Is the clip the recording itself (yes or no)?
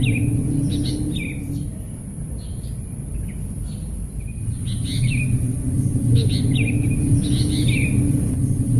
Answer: yes